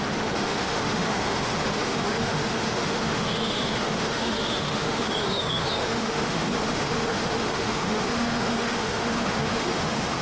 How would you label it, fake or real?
fake